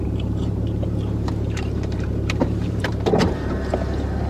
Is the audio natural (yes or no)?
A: no